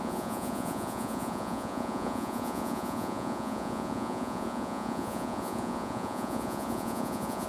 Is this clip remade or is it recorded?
remade